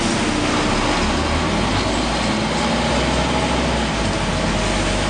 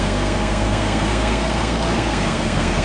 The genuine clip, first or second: first